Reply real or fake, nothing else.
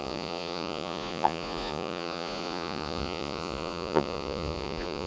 fake